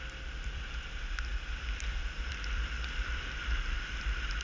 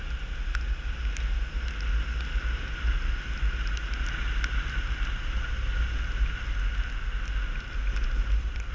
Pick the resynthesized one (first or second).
first